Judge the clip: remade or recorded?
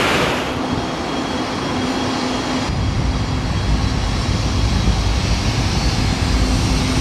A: recorded